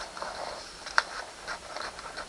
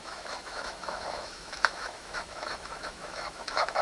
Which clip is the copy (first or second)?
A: second